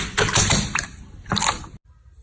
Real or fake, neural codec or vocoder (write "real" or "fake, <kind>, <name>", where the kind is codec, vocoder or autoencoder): real